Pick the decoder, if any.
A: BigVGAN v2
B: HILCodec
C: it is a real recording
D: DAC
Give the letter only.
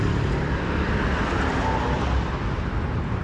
A